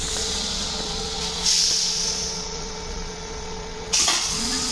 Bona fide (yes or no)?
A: no